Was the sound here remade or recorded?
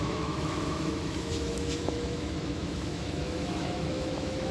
remade